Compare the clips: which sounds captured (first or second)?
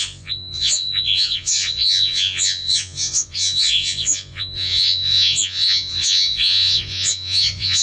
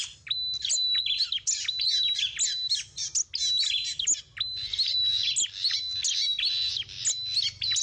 second